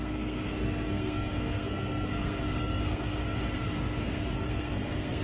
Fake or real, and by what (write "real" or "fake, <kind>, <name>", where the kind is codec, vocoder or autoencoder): fake, codec, SNAC